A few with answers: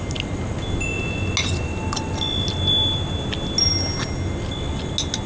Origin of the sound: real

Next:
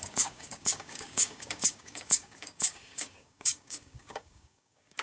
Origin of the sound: fake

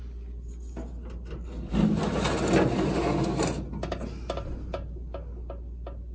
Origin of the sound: real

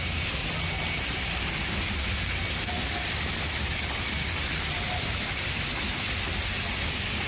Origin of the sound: real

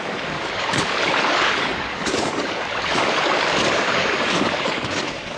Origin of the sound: fake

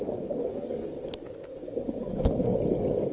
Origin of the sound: fake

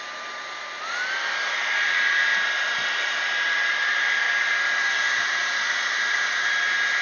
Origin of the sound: real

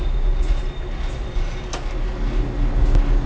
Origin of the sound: real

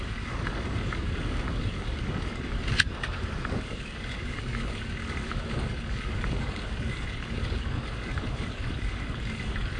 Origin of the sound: fake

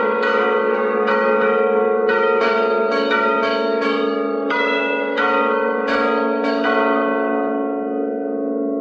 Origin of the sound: fake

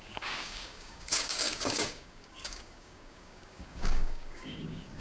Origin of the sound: fake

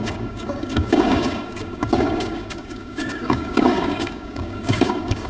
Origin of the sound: fake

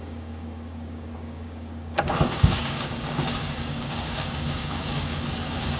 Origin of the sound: fake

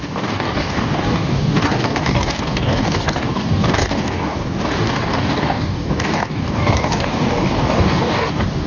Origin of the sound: fake